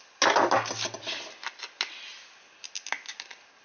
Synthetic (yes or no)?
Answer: no